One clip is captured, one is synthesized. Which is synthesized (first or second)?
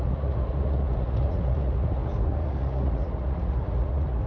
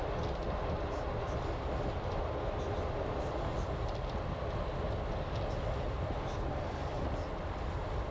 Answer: first